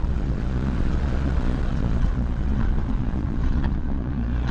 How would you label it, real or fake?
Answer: fake